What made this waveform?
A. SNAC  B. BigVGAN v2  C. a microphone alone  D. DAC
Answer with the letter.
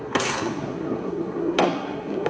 A